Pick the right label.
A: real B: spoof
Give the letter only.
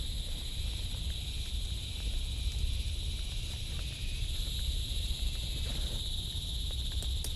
A